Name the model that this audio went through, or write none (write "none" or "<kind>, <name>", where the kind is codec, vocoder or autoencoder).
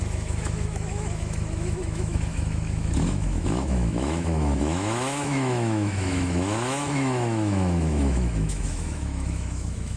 autoencoder, DAC-VAE